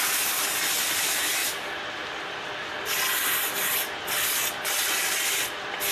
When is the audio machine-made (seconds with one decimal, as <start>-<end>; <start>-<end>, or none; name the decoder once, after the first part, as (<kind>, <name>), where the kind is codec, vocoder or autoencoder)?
1.4-2.5 (vocoder, BigVGAN v2)